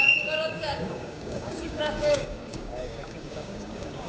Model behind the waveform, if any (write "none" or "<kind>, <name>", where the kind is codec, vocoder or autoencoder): codec, DAC